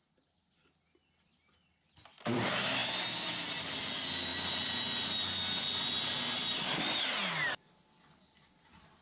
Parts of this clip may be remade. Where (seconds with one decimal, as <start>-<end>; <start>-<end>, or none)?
none